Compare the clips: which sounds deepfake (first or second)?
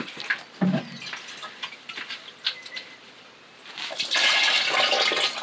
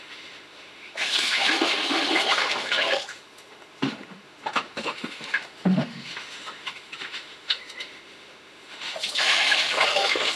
second